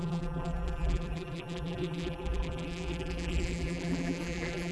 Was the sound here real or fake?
fake